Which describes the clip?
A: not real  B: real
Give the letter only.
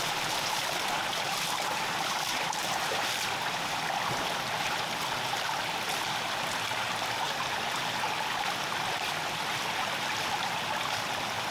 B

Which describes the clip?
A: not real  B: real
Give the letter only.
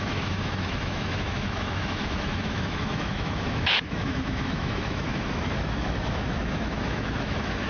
A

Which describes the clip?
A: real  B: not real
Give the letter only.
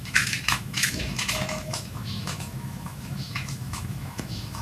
B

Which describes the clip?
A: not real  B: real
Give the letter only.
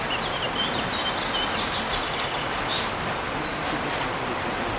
B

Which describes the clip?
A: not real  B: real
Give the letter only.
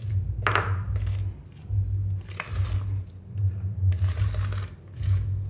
B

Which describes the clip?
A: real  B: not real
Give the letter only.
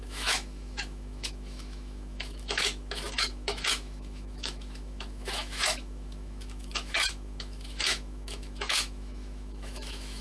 B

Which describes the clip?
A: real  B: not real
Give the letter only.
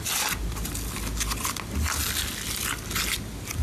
A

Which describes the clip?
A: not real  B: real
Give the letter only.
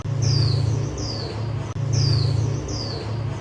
B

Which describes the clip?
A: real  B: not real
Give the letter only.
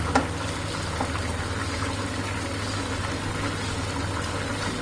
A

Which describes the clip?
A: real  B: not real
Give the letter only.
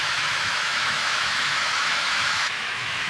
B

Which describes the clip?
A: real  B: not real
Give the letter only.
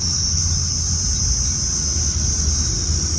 A